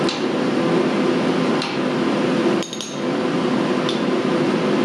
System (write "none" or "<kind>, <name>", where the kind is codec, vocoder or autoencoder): none